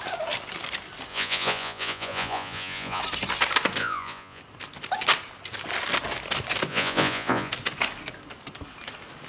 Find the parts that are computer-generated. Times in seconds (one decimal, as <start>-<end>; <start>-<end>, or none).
1.1-3.0; 3.8-4.4; 6.7-7.5